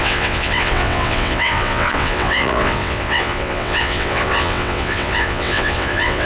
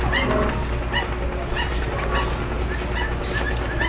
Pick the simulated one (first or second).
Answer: first